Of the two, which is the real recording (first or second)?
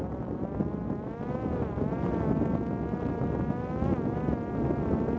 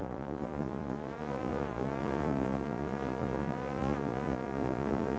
first